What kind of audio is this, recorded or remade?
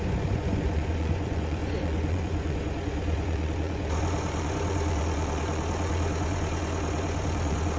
remade